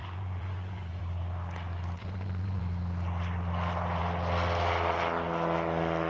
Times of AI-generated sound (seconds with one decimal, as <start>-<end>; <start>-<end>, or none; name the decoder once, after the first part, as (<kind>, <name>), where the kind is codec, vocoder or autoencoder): 0.0-1.0 (vocoder, Vocos); 2.0-2.6